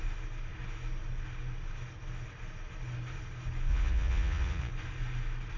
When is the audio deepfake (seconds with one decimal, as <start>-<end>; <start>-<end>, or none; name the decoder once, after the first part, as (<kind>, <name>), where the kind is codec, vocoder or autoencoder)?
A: 3.7-4.7 (vocoder, Vocos)